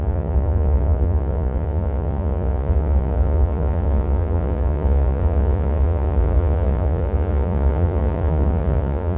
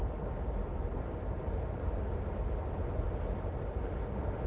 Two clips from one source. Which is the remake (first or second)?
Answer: first